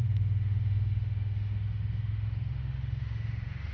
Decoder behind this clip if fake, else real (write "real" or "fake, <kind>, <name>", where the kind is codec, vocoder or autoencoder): fake, autoencoder, DAC-VAE